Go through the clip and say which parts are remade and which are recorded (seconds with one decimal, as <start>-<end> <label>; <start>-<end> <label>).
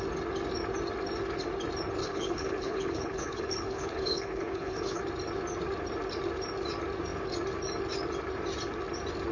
0.0-2.0 recorded; 2.0-5.0 remade; 5.0-9.3 recorded